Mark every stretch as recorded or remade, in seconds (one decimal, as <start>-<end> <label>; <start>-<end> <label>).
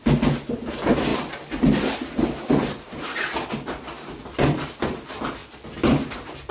0.0-6.5 recorded